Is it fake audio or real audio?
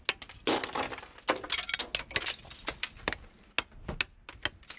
real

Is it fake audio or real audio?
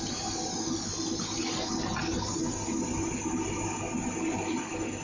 real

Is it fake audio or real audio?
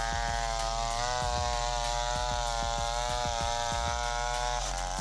real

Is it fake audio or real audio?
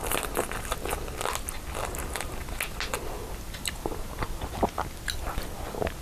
real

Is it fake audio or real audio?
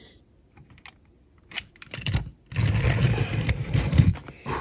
fake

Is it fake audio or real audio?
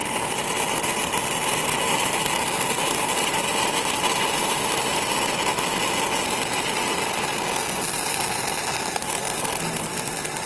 real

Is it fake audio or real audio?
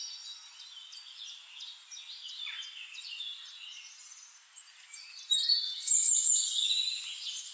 real